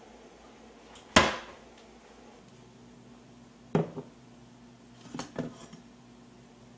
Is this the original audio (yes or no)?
yes